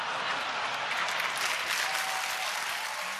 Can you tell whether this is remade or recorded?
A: recorded